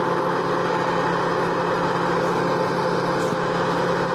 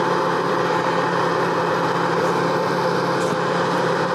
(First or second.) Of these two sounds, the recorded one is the first